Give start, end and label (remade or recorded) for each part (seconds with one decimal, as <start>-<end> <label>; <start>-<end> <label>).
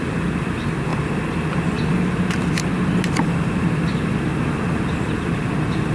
0.0-5.9 recorded